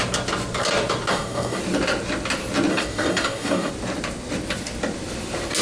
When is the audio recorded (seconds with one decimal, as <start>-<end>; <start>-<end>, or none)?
0.0-1.1; 1.6-2.7; 3.7-5.6